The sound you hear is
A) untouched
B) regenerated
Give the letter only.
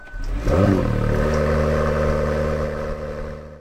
A